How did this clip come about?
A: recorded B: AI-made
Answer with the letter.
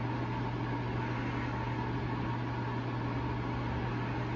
A